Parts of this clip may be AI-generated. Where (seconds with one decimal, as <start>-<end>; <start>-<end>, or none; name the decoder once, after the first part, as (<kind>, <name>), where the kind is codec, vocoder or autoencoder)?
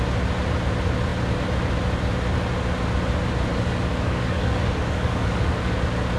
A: 3.5-5.7 (codec, DAC)